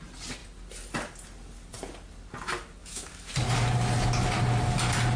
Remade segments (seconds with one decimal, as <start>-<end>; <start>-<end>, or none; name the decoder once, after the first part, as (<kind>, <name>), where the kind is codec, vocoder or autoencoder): 2.8-3.3 (autoencoder, DAC-VAE)